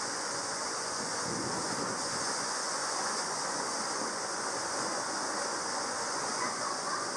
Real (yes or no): no